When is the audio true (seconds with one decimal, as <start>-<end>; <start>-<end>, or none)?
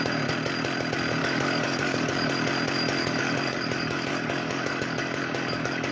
0.0-1.2; 2.3-3.0